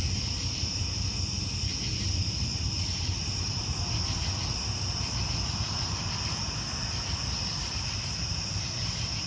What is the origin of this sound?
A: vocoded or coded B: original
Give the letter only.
B